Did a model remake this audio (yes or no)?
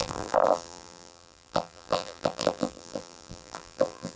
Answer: yes